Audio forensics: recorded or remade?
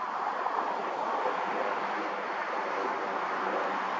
recorded